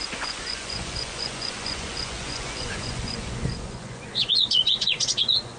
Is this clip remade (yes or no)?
yes